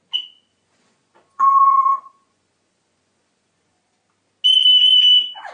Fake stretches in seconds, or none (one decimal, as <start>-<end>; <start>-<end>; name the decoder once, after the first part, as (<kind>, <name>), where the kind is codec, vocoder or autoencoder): 0.5-3.8 (vocoder, Vocos)